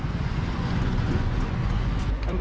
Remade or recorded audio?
remade